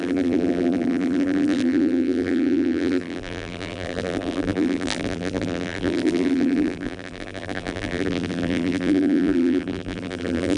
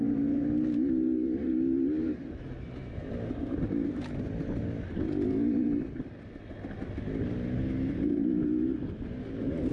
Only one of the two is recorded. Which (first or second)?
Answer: second